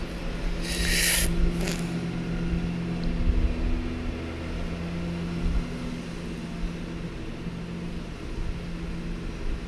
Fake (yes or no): no